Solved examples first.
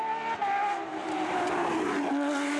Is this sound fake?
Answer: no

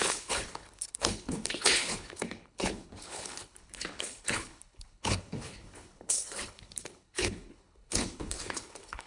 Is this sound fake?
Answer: yes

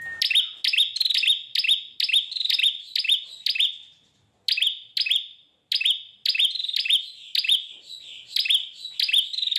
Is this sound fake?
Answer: no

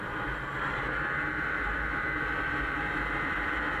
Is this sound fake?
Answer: yes